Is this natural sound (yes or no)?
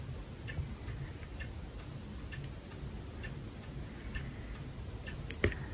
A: yes